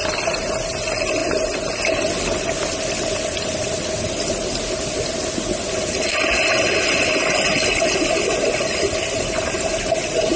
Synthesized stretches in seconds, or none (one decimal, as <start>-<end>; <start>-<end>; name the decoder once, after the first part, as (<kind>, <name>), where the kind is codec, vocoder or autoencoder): 1.2-2.0 (vocoder, BigVGAN v2)